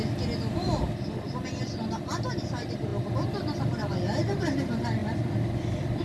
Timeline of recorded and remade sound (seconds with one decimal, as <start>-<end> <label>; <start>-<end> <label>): 0.0-6.0 recorded